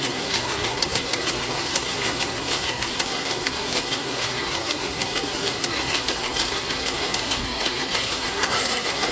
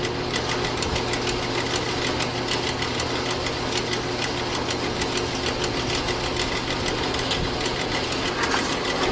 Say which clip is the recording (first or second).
second